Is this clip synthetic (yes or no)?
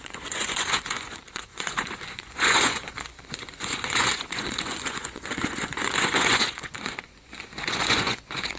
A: yes